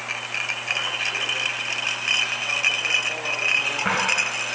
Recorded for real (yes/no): yes